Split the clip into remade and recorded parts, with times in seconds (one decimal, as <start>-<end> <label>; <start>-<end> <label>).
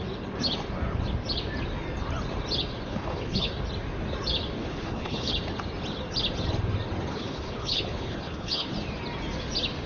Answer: 0.0-2.9 recorded; 2.9-3.5 remade; 3.5-4.6 recorded; 4.6-5.3 remade; 5.3-7.1 recorded; 7.1-8.7 remade; 8.7-9.9 recorded